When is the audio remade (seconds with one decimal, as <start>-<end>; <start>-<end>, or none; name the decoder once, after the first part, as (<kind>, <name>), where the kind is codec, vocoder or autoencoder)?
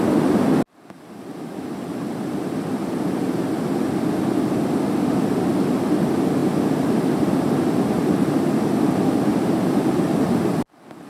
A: 6.4-8.6 (vocoder, BigVGAN v2); 9.3-10.1